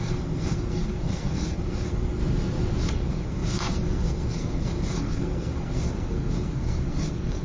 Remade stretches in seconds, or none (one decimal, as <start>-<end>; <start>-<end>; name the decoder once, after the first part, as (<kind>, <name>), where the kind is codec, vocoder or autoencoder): 0.0-2.2 (codec, SNAC); 2.9-7.4